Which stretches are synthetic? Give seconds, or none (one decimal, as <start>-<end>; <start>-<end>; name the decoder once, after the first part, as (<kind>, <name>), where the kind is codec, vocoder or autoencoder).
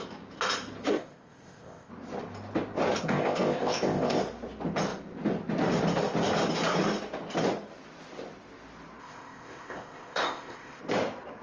0.9-1.9 (codec, ZipCodec); 3.0-4.2; 9.0-10.8